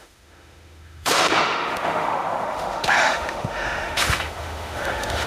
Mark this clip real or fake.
fake